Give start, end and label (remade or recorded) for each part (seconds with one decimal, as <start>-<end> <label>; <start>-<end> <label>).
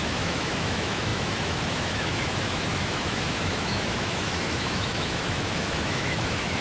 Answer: 0.0-6.6 remade